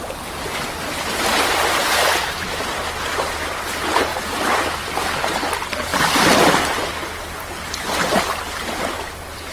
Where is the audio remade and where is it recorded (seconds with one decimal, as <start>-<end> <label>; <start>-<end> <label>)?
0.0-1.8 recorded; 1.8-2.8 remade; 2.8-4.1 recorded; 4.1-4.7 remade; 4.7-9.5 recorded